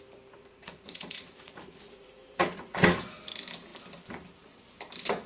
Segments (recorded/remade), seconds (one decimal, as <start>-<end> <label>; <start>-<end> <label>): 0.0-0.4 recorded; 0.4-3.2 remade; 3.2-5.3 recorded